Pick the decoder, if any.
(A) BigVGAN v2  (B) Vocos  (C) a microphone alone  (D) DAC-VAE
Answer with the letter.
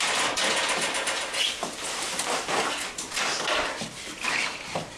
C